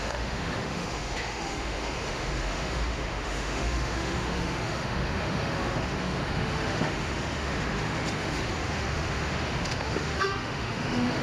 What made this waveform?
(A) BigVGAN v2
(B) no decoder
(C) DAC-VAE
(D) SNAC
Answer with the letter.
C